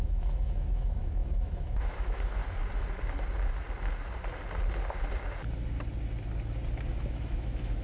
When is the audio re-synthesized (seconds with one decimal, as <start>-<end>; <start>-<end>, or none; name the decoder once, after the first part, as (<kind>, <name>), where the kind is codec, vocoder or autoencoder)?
0.0-2.4 (autoencoder, DAC-VAE); 7.1-7.8